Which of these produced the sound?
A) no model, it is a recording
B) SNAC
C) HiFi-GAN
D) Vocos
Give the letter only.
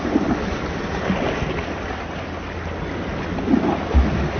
A